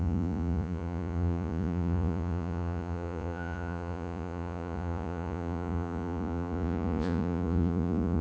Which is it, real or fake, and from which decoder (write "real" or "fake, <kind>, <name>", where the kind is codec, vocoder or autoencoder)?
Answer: fake, vocoder, Vocos